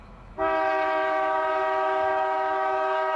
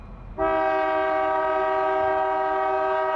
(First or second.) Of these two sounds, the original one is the second